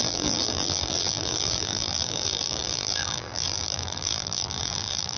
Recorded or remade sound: remade